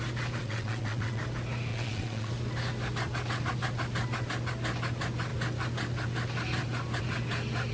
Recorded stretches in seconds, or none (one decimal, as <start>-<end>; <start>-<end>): 0.0-0.4; 1.2-1.7; 2.3-7.7